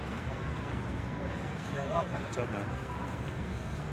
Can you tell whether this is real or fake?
fake